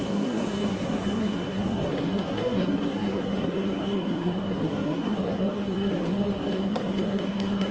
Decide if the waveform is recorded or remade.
remade